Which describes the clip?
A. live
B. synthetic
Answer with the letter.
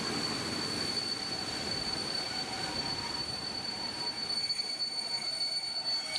A